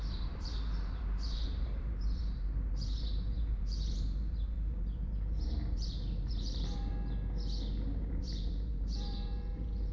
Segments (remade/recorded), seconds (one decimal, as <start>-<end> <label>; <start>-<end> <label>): 0.0-6.9 remade; 6.9-8.0 recorded; 8.0-9.9 remade